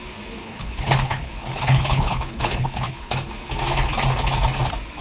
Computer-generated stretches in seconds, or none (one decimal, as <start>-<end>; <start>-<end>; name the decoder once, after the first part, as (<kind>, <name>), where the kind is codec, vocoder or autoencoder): 0.4-3.3 (codec, HILCodec)